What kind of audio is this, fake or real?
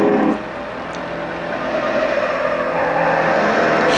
real